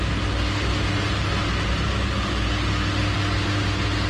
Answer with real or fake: real